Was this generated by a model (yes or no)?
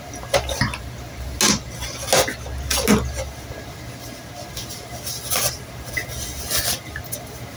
no